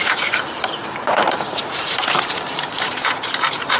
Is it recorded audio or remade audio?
remade